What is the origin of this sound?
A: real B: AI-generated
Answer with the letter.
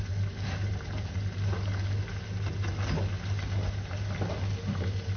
A